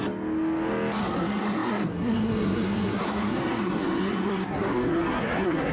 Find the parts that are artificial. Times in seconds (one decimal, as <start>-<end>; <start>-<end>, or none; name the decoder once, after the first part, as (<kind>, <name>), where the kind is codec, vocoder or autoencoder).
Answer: 1.0-5.7 (codec, SNAC)